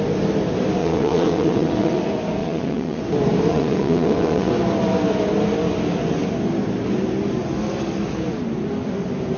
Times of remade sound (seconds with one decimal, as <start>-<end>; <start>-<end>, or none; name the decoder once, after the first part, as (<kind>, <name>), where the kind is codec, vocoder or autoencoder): 0.8-2.0 (vocoder, WaveNeXt); 2.4-3.0; 3.5-4.5